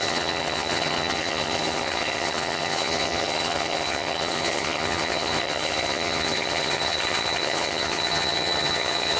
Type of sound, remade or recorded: remade